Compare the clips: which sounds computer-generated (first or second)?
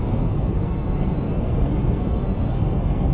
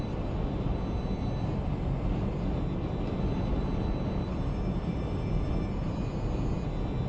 first